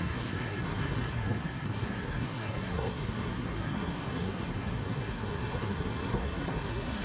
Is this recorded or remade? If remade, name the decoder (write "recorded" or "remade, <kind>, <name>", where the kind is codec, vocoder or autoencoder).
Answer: remade, codec, SNAC